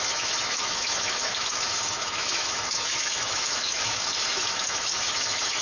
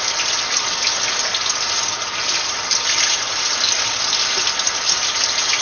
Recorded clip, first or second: second